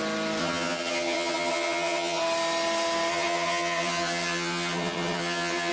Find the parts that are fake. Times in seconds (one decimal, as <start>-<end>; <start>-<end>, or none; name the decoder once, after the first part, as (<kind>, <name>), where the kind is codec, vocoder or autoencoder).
0.4-2.2 (vocoder, HiFi-GAN); 3.1-5.7